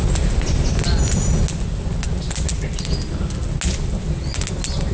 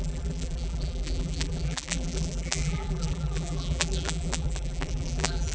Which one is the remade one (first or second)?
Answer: second